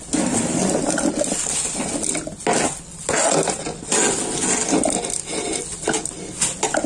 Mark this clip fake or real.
real